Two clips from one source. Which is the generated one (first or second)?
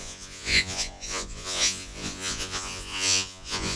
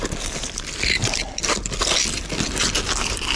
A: first